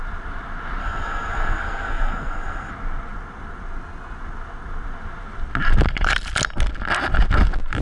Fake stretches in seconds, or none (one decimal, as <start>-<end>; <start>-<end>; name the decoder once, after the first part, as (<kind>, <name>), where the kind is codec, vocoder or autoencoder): 0.8-2.7 (codec, SNAC)